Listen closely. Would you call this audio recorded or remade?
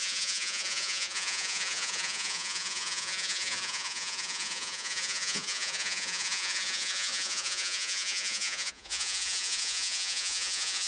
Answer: remade